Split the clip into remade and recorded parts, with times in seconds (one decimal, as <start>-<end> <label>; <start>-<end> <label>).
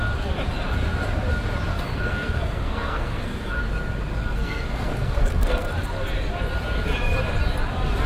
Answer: 0.0-1.7 recorded; 1.7-3.6 remade; 3.6-4.2 recorded; 4.2-5.7 remade; 5.7-8.1 recorded